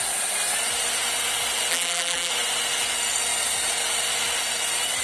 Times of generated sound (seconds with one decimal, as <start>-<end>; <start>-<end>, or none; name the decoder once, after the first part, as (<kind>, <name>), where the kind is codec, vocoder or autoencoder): 1.7-2.3 (vocoder, BigVGAN v2)